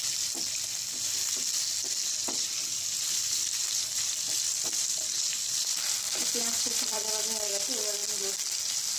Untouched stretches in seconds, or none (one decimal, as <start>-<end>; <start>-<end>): 0.0-2.2; 7.0-9.0